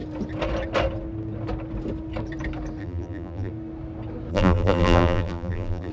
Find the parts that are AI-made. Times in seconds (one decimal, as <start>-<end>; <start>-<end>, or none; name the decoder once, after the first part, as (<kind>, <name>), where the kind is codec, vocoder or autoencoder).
2.8-3.5 (vocoder, BigVGAN v2); 4.3-5.9